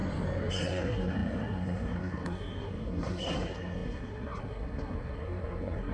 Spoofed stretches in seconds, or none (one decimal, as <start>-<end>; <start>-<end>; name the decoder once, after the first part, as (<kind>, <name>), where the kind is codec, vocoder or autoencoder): 0.5-5.9 (codec, SNAC)